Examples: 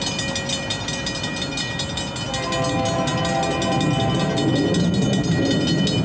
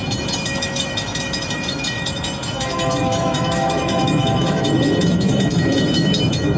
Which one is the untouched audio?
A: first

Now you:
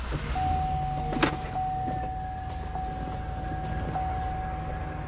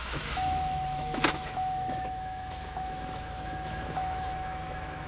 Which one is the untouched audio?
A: first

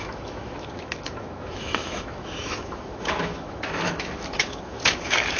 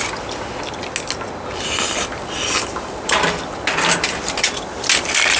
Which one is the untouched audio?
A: second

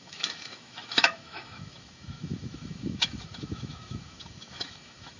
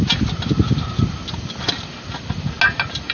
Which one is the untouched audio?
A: second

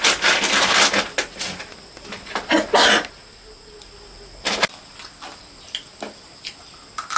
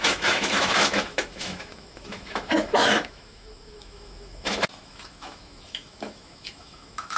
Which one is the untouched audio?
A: first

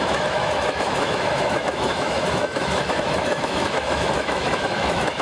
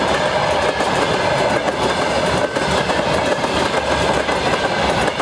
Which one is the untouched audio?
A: second